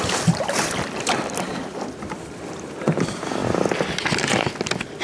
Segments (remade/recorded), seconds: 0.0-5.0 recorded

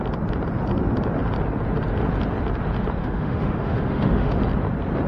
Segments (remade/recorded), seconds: 0.0-3.0 recorded; 3.0-4.4 remade; 4.4-5.1 recorded

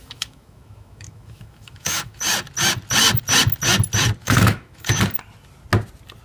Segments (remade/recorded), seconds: 0.0-2.2 remade; 2.2-4.2 recorded; 4.2-5.0 remade; 5.0-6.2 recorded

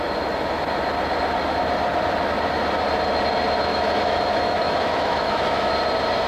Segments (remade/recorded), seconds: 0.0-3.7 recorded; 3.7-5.7 remade; 5.7-6.3 recorded

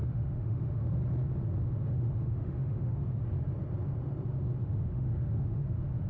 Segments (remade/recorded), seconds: 0.0-1.0 remade; 1.0-1.8 recorded; 1.8-3.2 remade; 3.2-4.6 recorded; 4.6-6.1 remade

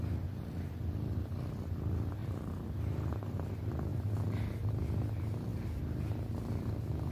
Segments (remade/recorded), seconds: 0.0-7.1 recorded